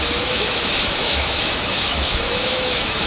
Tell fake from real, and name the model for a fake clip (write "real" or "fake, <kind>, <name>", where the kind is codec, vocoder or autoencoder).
fake, autoencoder, DAC-VAE